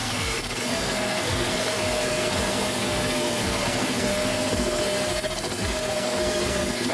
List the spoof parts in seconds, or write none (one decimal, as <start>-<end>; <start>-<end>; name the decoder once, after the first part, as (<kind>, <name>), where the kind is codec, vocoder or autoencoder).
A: 0.0-6.9 (codec, SNAC)